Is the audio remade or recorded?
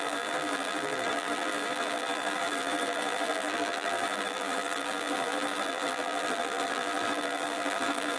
remade